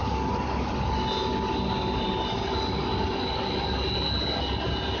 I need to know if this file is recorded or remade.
recorded